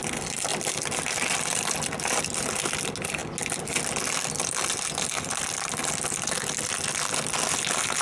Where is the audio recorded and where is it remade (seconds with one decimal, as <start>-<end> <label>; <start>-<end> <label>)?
0.0-0.5 recorded; 0.5-2.7 remade; 2.7-8.0 recorded